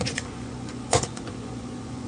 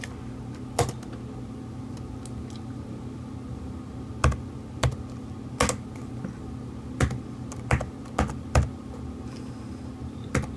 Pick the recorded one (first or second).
second